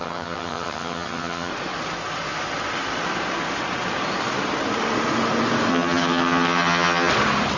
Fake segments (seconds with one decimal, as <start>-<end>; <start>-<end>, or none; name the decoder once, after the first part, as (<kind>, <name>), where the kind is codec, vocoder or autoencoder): 0.0-1.5 (vocoder, HiFi-GAN); 5.7-7.1